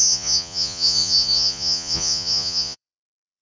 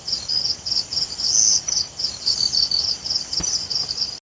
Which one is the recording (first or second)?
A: second